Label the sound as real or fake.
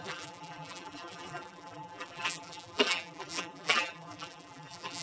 fake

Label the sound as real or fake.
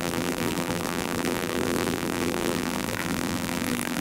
fake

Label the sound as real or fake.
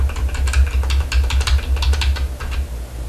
real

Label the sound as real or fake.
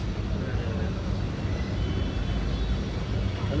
real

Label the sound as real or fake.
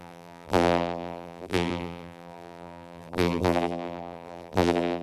fake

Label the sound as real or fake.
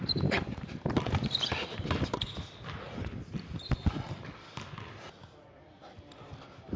fake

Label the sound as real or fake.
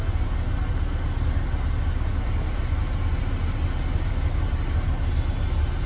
real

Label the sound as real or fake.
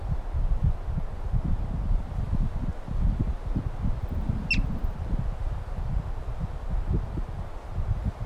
real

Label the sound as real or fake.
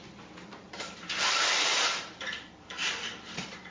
fake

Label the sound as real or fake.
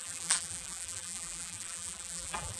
fake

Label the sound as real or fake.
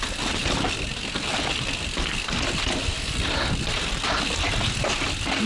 real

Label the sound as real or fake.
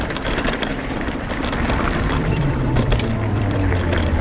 fake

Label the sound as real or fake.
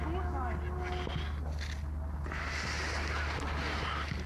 real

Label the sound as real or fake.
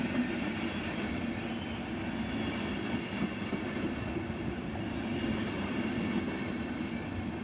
real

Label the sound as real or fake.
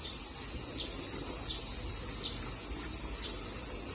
real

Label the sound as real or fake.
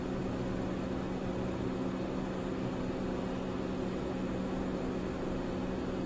real